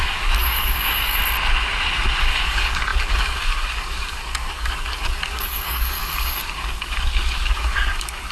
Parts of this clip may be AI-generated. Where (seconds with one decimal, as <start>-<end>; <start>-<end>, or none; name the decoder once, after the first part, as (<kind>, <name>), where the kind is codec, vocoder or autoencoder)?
0.0-1.2 (codec, DAC); 2.2-8.3